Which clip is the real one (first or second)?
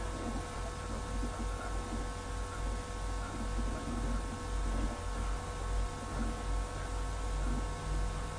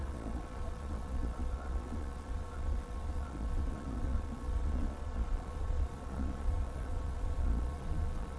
first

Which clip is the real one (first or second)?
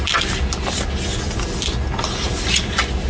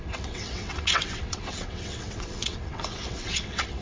first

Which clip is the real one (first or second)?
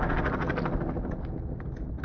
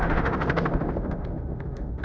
first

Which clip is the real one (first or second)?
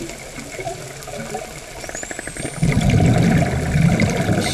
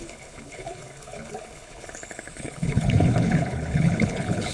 first